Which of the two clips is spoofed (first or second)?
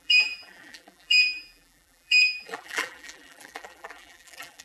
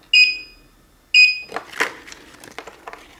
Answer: first